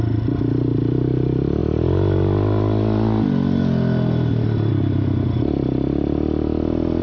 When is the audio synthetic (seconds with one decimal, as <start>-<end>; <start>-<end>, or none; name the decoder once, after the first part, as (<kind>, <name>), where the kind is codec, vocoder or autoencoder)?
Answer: none